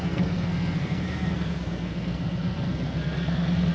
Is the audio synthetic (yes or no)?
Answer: yes